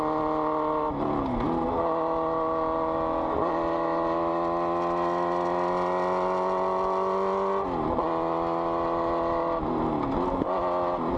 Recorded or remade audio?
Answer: recorded